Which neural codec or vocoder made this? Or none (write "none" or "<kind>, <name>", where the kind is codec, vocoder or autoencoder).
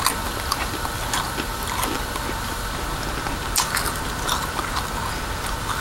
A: none